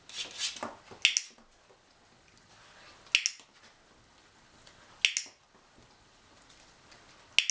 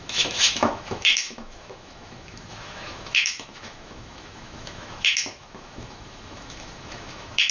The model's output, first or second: second